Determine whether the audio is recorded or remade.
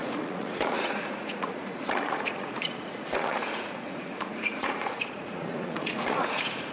remade